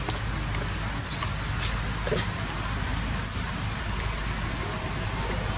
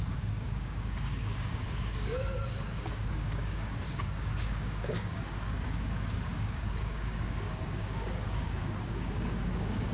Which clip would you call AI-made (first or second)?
second